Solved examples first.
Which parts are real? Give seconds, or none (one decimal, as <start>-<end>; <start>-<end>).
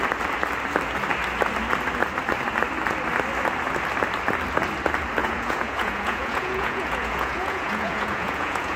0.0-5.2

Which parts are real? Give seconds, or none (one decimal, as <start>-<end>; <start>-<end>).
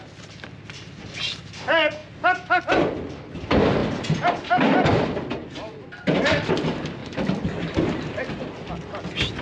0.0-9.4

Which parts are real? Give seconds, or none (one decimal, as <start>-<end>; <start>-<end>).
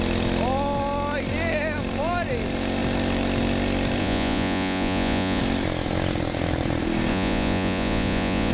0.0-4.0; 5.4-7.1